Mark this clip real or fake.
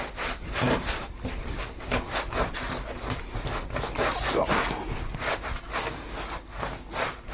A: real